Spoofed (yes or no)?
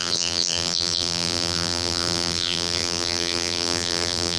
yes